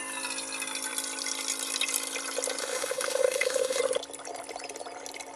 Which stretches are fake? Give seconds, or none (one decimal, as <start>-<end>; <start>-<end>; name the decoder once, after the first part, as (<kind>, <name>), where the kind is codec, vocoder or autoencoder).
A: 2.6-3.8 (autoencoder, DAC-VAE)